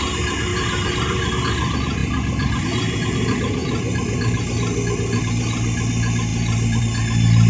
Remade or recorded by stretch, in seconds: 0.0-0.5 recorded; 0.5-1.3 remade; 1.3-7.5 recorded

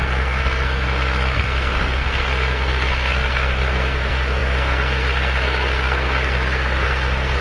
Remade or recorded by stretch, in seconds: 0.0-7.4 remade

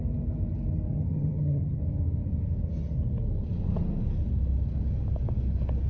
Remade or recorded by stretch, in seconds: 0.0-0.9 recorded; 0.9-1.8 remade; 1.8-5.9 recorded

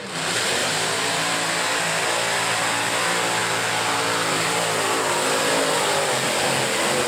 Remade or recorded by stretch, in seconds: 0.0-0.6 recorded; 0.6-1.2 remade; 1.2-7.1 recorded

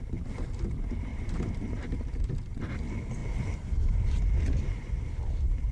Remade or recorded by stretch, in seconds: 0.0-1.1 recorded; 1.1-2.0 remade; 2.0-5.7 recorded

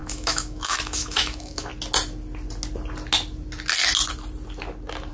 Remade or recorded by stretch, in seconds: 0.0-1.7 remade; 1.7-5.1 recorded

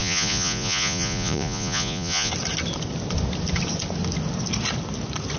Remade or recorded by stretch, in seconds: 0.0-2.3 remade; 2.3-5.4 recorded